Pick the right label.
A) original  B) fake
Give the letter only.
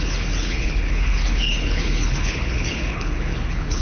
B